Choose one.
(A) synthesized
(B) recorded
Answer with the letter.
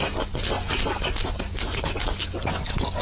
B